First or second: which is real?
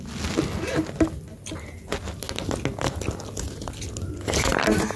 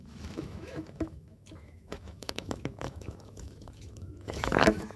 first